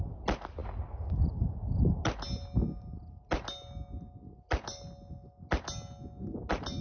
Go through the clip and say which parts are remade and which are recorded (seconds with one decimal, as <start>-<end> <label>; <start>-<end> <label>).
0.0-6.8 recorded